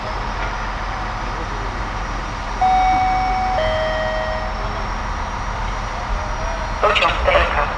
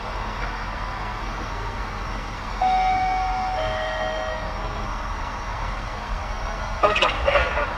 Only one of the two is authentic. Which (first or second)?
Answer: first